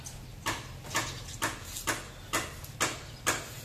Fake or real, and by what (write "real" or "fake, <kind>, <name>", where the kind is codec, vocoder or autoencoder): real